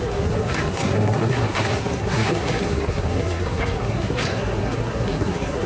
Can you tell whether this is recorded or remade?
remade